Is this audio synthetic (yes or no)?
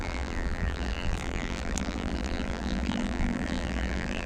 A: yes